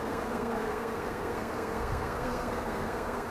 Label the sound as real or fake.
fake